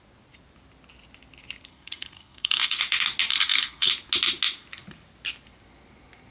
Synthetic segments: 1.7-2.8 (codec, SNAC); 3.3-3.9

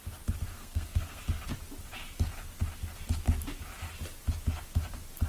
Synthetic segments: 0.5-1.2 (codec, SNAC)